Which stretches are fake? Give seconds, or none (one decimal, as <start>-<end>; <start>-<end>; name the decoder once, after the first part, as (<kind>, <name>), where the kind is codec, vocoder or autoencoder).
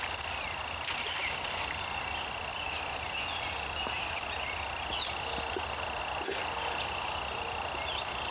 none